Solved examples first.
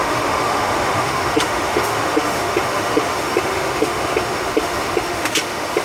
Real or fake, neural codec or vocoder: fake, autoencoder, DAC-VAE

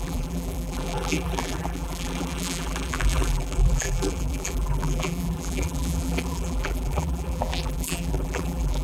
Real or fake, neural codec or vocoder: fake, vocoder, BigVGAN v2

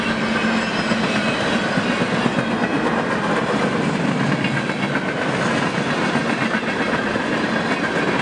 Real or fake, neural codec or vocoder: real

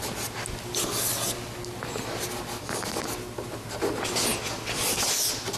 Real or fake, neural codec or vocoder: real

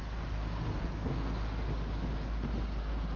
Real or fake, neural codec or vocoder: real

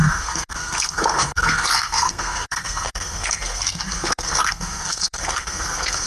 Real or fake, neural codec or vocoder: fake, codec, SNAC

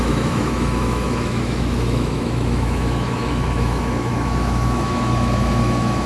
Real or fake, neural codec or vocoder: fake, autoencoder, DAC-VAE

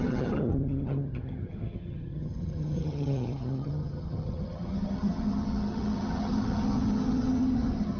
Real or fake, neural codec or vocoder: fake, vocoder, HiFi-GAN